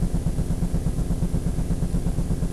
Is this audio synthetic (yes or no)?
no